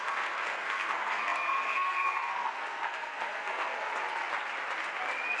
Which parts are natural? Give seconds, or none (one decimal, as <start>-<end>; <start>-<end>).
3.9-5.4